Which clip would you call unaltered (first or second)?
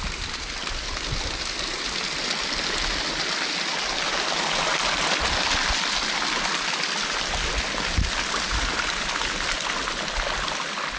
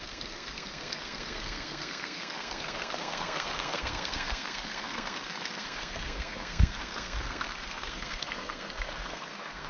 first